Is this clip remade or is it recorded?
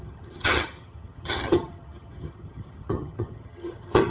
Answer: remade